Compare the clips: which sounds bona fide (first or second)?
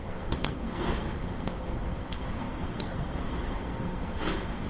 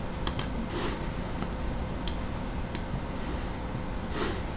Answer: second